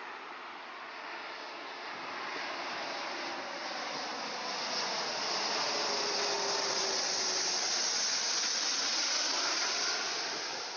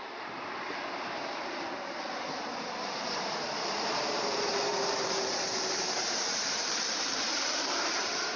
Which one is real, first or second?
first